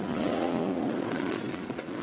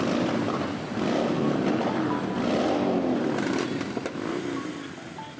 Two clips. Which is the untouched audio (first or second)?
second